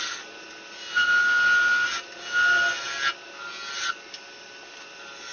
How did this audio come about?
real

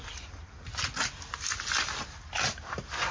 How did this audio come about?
real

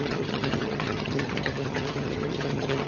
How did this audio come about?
fake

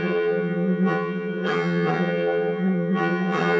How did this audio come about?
fake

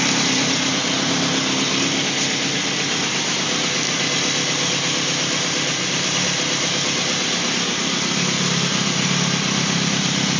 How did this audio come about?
real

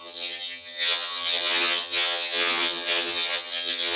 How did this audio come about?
fake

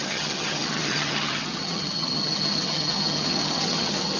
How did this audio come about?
fake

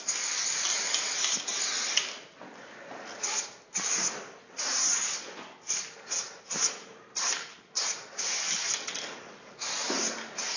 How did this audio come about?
real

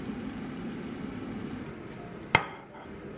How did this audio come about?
real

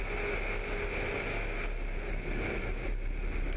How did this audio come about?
real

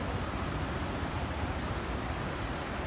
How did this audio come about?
real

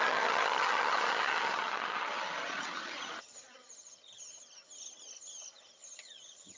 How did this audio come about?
fake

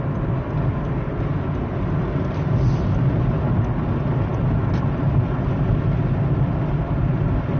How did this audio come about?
real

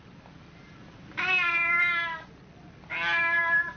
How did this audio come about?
real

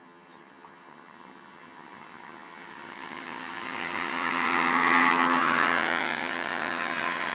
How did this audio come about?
fake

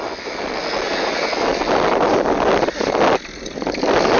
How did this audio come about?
real